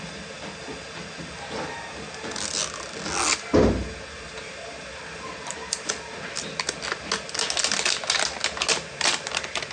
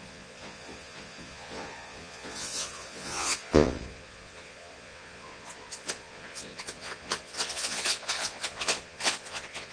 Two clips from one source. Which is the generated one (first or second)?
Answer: second